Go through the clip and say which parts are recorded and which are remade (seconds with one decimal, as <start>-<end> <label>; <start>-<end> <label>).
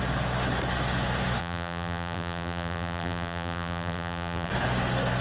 0.0-1.4 recorded; 1.4-4.5 remade; 4.5-5.2 recorded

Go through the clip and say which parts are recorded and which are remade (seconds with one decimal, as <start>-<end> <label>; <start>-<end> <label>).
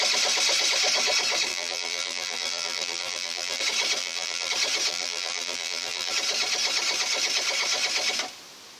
0.0-1.5 recorded; 1.5-3.6 remade; 3.6-4.0 recorded; 4.0-4.5 remade; 4.5-4.9 recorded; 4.9-6.1 remade; 6.1-8.8 recorded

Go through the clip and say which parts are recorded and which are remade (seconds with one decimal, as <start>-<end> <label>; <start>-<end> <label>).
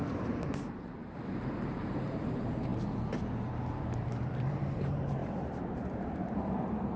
0.0-7.0 remade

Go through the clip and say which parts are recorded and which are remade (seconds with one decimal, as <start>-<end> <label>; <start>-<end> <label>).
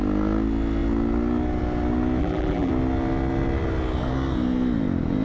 0.0-2.2 recorded; 2.2-2.7 remade; 2.7-5.2 recorded